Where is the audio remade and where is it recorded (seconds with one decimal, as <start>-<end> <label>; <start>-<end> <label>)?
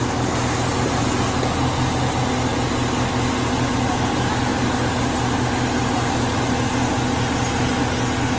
0.0-8.4 recorded